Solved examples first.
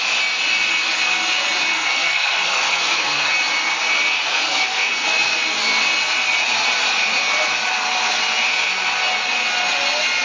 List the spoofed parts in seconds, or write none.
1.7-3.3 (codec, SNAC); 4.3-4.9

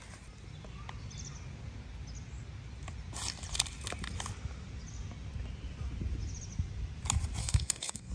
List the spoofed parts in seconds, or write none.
7.4-8.1 (codec, SNAC)

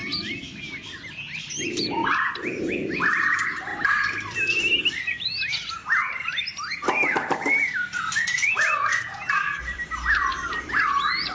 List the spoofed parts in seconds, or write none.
1.6-11.3 (vocoder, BigVGAN v2)

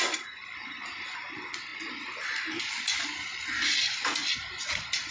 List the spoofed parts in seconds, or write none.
none